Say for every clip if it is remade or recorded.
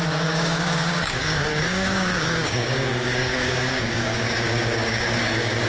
remade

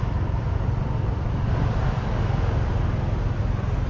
recorded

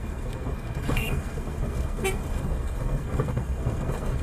remade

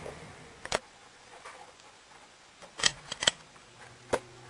remade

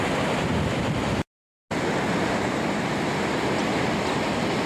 recorded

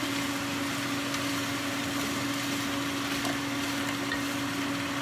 recorded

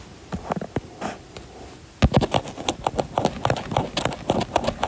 recorded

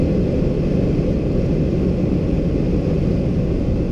recorded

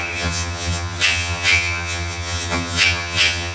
remade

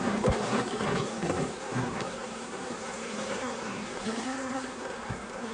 remade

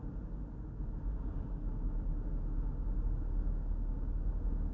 recorded